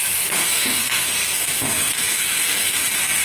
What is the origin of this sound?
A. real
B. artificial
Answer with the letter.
B